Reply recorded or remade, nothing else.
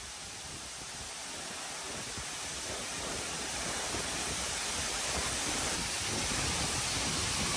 recorded